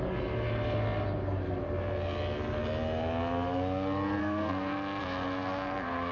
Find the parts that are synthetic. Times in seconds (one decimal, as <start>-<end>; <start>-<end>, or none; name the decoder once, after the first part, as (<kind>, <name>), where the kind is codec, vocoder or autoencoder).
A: 4.2-6.1 (codec, SNAC)